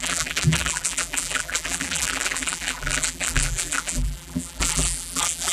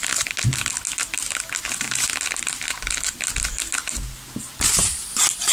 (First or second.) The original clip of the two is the second